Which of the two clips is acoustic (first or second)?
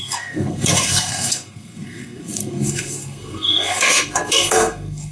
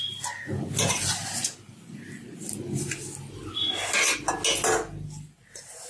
second